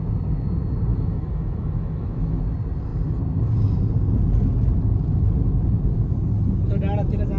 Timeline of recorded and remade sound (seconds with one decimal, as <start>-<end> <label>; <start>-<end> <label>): 0.0-0.9 recorded; 0.9-2.4 remade; 2.4-7.4 recorded